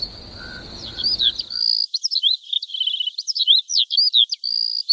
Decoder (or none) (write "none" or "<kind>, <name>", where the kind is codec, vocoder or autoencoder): none